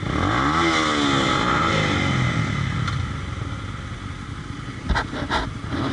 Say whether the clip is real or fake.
real